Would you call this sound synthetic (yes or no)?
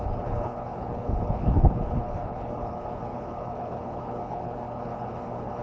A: yes